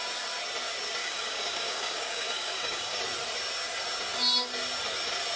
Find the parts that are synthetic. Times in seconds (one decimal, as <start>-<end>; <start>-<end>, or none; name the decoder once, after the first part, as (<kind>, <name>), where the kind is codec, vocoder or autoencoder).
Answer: 1.0-3.0 (codec, DAC)